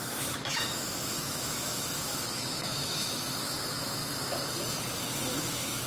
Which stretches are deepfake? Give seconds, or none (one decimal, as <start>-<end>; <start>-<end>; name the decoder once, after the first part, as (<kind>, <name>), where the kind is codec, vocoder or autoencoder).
0.0-4.0 (autoencoder, DAC-VAE); 5.4-5.9